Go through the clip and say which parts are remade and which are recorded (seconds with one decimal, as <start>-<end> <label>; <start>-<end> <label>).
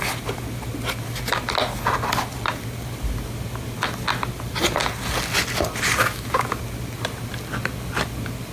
0.0-6.0 recorded; 6.0-6.6 remade; 6.6-8.5 recorded